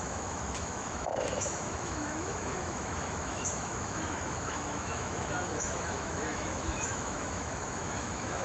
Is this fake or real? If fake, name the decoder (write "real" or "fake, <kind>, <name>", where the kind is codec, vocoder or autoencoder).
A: fake, autoencoder, DAC-VAE